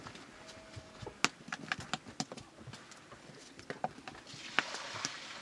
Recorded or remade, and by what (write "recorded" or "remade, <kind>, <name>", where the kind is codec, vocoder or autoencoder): recorded